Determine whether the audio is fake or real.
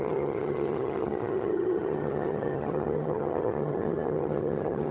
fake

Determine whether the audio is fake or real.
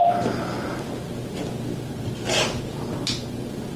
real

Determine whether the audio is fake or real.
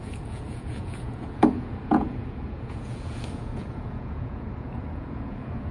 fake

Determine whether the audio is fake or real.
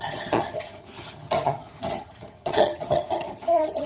fake